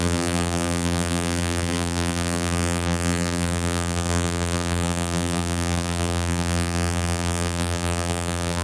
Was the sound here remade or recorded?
remade